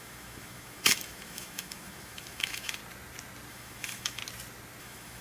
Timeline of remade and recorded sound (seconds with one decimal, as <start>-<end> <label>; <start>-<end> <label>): 0.0-2.8 remade; 2.8-3.5 recorded; 3.5-4.2 remade; 4.2-4.8 recorded; 4.8-5.2 remade